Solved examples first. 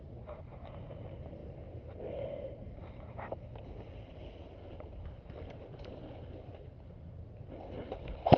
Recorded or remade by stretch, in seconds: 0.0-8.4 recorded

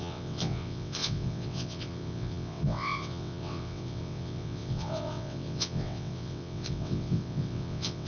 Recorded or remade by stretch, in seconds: 0.0-8.1 remade

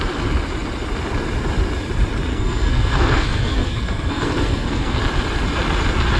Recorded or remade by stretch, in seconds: 0.0-2.3 recorded; 2.3-5.0 remade; 5.0-6.2 recorded

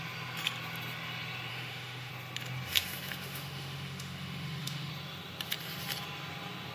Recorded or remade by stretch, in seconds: 0.0-1.5 recorded; 1.5-2.1 remade; 2.1-2.7 recorded; 2.7-4.9 remade; 4.9-6.7 recorded

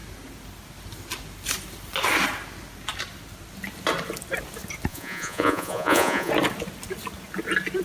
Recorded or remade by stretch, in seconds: 0.0-4.9 recorded; 4.9-6.3 remade; 6.3-7.8 recorded

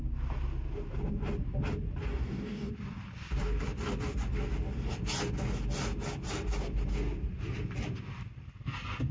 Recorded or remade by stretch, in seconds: 0.0-2.1 recorded; 2.1-2.7 remade; 2.7-9.1 recorded

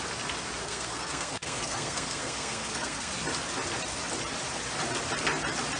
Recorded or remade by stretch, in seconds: 0.0-0.6 recorded; 0.6-3.1 remade; 3.1-5.8 recorded

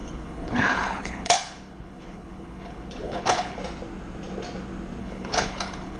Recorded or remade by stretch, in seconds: 0.0-3.6 remade; 3.6-5.0 recorded; 5.0-6.0 remade